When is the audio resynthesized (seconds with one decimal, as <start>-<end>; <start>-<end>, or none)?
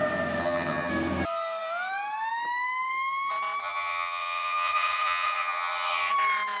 0.4-0.9; 3.6-6.1